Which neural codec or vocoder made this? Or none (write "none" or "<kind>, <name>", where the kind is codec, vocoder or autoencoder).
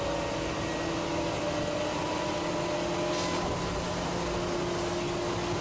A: none